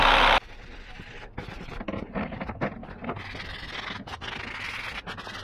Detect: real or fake real